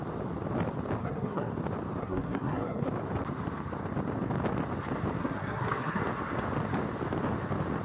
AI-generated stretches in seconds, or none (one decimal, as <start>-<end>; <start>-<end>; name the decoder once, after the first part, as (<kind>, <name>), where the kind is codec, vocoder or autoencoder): 1.0-1.5 (codec, SNAC); 2.0-2.9; 5.2-6.0